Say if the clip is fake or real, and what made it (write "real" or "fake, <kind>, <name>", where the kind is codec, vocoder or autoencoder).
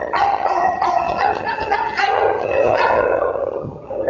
fake, vocoder, HiFi-GAN